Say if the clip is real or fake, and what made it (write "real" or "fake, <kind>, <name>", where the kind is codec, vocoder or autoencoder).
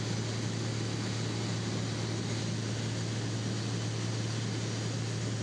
real